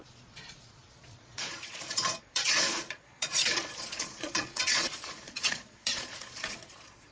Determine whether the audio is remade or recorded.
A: remade